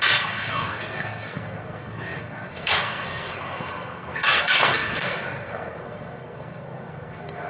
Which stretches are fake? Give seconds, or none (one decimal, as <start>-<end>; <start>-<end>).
0.0-7.5